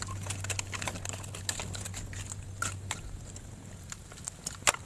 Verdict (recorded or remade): recorded